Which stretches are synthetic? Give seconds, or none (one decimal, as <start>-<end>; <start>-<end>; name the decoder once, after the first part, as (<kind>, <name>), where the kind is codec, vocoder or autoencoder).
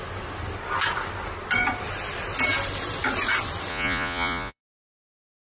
3.7-4.6 (vocoder, Vocos)